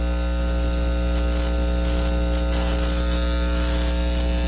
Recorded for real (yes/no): yes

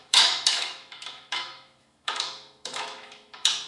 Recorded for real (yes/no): no